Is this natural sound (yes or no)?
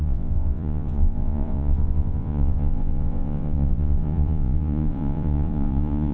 no